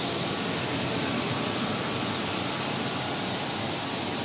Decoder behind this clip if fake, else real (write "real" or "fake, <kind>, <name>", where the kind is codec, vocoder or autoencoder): real